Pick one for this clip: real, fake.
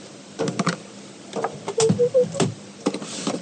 real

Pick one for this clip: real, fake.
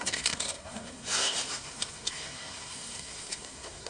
fake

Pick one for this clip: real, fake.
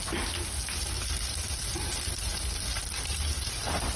real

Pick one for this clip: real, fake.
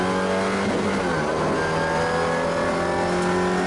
real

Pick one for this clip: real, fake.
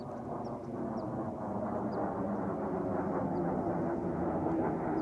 real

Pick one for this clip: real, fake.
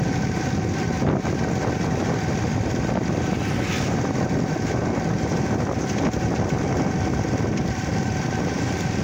real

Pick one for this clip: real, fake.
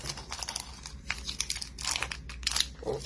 real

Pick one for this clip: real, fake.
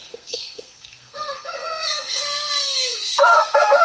fake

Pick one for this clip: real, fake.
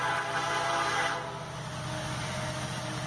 real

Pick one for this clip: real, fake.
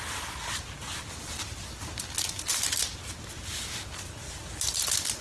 real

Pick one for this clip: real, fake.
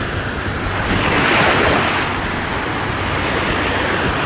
real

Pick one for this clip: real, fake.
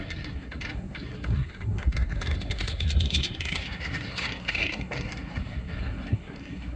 fake